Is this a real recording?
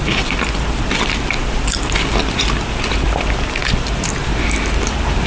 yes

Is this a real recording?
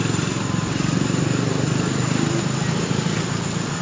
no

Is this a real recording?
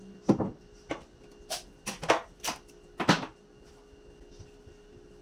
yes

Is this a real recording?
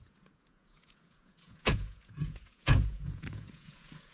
no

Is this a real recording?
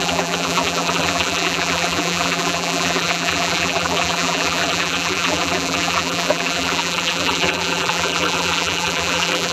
no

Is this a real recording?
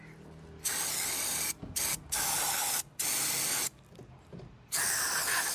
yes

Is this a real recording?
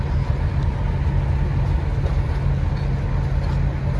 yes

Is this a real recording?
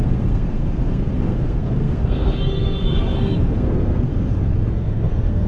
no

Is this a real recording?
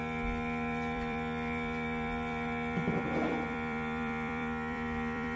no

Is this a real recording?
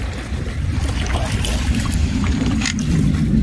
no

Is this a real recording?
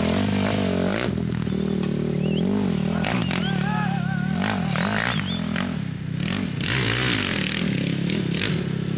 yes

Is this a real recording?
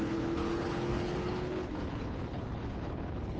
no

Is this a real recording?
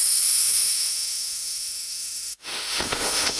no